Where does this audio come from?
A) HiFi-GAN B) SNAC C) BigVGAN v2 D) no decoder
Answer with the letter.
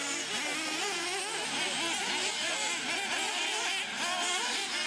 D